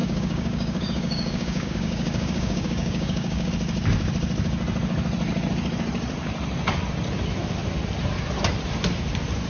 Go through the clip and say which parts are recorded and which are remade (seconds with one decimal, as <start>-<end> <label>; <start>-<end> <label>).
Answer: 0.0-3.5 remade; 3.5-9.5 recorded